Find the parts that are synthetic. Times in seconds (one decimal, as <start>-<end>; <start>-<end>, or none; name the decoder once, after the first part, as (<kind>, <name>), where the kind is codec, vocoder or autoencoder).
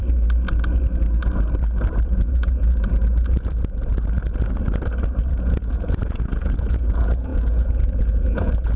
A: 2.1-3.9 (vocoder, Vocos); 5.3-8.8